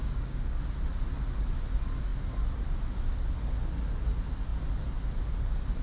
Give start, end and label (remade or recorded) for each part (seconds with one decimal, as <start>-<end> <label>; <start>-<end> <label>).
0.0-0.6 remade; 0.6-5.8 recorded

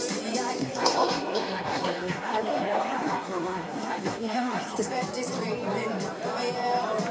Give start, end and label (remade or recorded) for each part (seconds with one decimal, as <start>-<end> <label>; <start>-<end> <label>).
0.0-0.6 recorded; 0.6-4.9 remade; 4.9-7.1 recorded

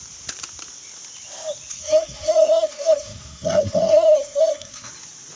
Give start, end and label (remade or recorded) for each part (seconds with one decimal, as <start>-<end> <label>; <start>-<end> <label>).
0.0-1.7 recorded; 1.7-4.9 remade; 4.9-5.4 recorded

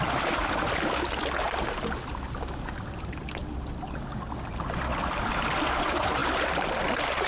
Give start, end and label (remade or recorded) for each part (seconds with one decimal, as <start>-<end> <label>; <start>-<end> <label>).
0.0-7.3 recorded

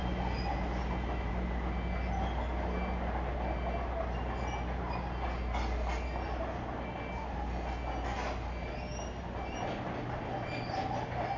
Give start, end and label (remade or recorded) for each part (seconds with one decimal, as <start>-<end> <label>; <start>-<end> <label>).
0.0-11.4 recorded